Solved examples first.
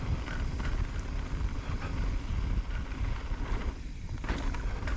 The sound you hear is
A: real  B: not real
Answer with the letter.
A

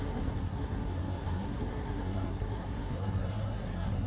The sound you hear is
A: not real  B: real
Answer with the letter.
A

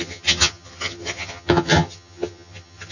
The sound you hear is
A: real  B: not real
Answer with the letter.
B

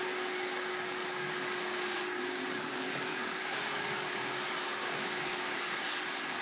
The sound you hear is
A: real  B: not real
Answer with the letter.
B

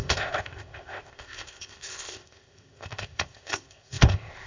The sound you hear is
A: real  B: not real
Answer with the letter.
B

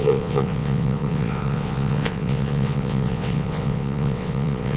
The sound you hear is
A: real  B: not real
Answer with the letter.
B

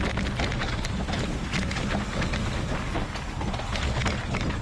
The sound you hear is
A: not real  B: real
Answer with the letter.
B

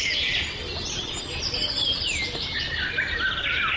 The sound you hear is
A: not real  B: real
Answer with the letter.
B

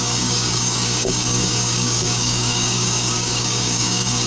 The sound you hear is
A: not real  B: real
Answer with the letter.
A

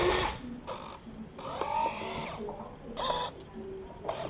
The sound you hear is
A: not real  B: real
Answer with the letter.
B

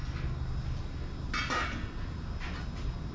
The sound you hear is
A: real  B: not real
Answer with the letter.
A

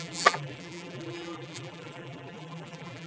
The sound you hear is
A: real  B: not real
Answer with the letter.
B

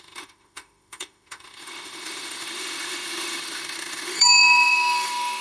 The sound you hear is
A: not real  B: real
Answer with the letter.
A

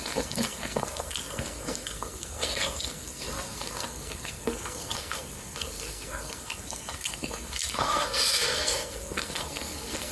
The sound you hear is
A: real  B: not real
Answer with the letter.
B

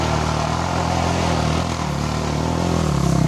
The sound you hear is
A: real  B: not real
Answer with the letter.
A